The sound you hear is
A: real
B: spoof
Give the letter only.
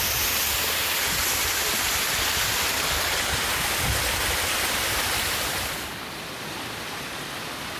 B